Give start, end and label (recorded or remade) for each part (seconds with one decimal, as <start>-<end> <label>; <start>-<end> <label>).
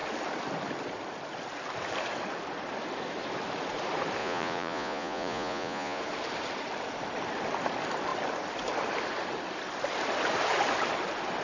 0.0-4.2 recorded; 4.2-6.0 remade; 6.0-11.4 recorded